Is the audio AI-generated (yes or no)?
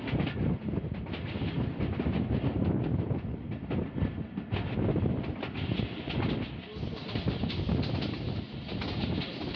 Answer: no